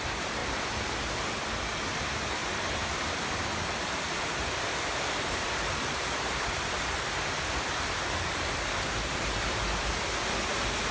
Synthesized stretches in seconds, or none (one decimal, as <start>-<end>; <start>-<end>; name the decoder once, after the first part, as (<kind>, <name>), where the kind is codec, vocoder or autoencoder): 0.0-0.4 (vocoder, BigVGAN v2); 1.8-10.9